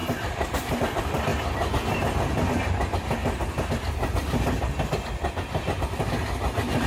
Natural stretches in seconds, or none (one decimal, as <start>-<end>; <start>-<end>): 0.0-6.9